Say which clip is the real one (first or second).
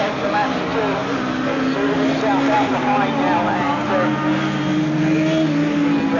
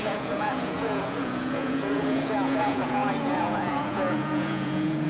first